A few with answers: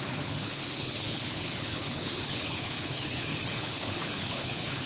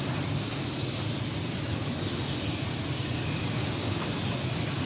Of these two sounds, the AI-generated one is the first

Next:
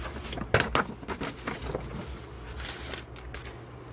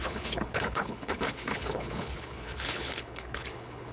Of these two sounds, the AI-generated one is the second